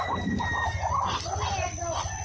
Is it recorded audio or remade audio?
recorded